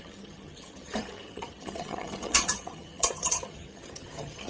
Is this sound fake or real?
fake